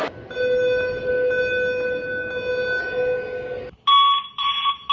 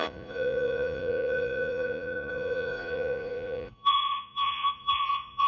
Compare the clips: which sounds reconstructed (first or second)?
second